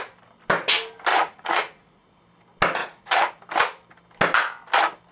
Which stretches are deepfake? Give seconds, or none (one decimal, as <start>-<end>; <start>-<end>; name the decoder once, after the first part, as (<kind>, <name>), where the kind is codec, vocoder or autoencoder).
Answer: 1.1-2.2 (vocoder, Vocos); 2.8-3.4